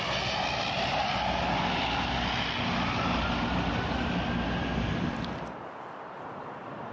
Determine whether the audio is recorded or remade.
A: recorded